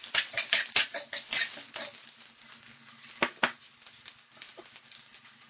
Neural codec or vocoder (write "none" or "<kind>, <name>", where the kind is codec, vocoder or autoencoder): none